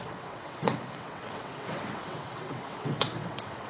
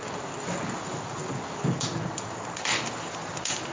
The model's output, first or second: first